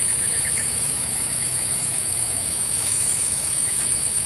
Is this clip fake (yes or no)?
yes